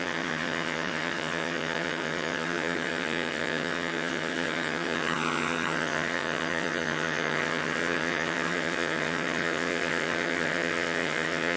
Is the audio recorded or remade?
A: remade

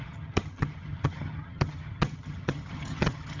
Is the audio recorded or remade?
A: remade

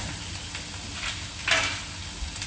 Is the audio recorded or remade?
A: recorded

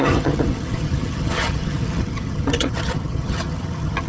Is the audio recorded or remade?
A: remade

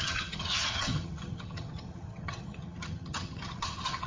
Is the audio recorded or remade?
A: remade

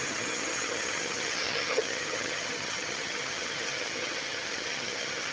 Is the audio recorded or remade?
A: remade